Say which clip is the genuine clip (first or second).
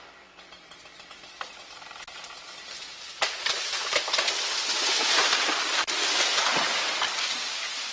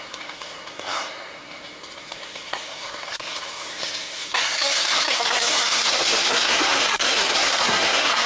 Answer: first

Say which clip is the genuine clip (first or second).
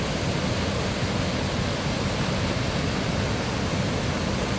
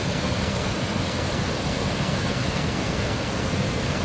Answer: first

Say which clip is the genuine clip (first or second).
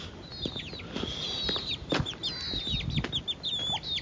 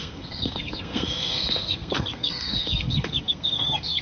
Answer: first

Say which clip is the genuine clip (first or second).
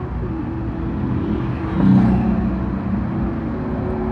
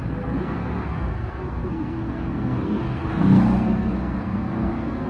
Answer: first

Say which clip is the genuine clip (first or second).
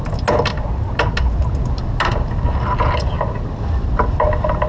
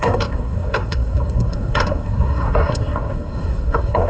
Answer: first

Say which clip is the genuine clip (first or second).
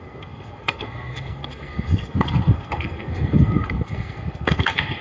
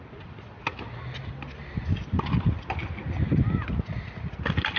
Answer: second